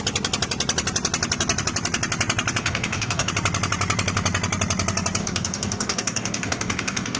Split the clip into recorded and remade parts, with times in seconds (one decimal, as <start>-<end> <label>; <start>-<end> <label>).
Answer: 0.0-2.6 recorded; 2.6-3.3 remade; 3.3-5.2 recorded; 5.2-7.2 remade